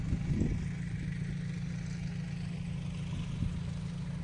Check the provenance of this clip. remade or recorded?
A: recorded